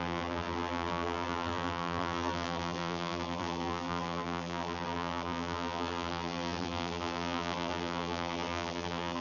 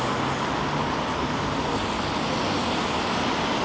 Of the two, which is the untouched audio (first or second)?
second